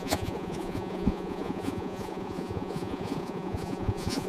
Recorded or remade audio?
remade